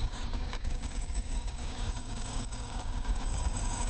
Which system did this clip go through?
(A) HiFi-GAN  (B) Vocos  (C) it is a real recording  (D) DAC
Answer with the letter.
D